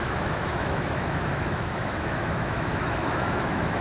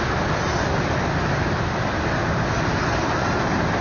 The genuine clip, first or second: second